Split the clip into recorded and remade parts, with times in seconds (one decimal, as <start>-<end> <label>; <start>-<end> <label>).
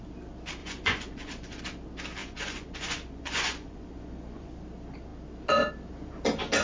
0.0-0.6 recorded; 0.6-1.6 remade; 1.6-2.2 recorded; 2.2-4.6 remade; 4.6-6.6 recorded